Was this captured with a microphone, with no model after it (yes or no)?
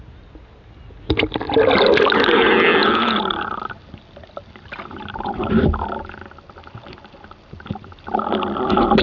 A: yes